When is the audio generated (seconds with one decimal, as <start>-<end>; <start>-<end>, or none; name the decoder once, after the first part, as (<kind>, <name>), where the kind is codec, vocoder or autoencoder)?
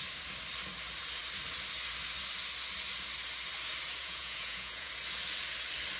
4.0-4.9 (vocoder, Vocos)